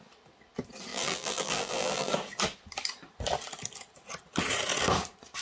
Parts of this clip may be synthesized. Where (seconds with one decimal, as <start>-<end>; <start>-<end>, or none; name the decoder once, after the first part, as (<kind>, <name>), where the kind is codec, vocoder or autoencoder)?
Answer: 0.9-2.1 (vocoder, BigVGAN v2)